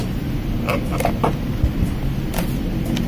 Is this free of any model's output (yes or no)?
yes